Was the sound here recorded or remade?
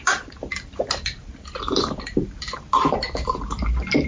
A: remade